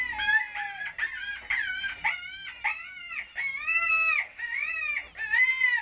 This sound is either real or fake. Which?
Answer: real